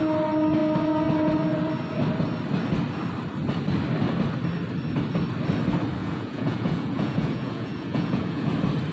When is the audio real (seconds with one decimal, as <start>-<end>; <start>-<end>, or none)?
0.0-6.0; 8.5-8.9